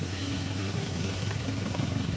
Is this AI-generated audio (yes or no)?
yes